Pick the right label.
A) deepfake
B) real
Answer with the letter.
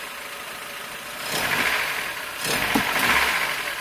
B